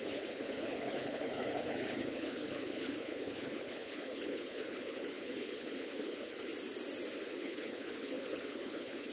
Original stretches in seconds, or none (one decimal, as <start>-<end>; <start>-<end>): 6.5-7.2